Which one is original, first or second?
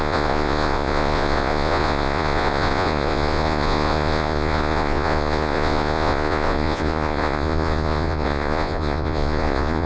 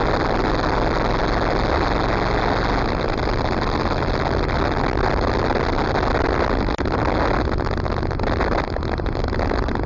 second